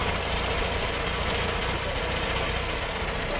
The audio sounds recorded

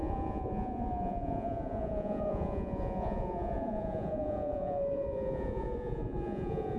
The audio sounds remade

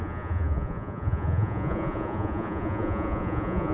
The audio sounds remade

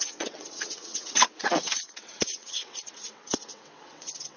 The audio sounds remade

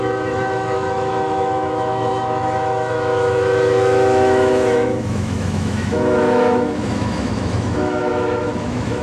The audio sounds remade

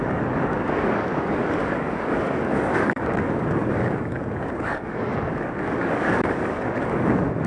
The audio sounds remade